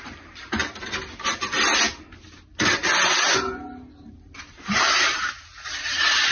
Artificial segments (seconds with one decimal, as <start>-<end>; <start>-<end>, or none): 0.0-0.6; 3.9-6.3

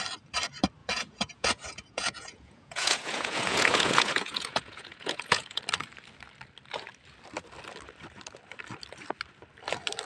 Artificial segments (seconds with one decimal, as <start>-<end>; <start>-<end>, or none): 0.8-5.6

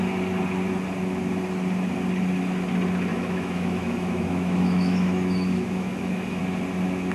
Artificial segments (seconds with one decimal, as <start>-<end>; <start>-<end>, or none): 3.1-6.4

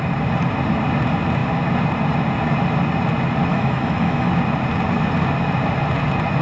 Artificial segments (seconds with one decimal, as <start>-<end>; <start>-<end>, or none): 3.5-4.3

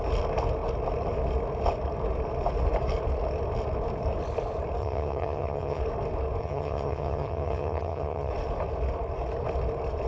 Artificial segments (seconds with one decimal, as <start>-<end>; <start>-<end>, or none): 4.8-5.8; 6.4-8.3